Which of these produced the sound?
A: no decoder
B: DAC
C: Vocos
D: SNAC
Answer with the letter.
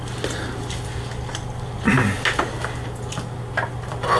A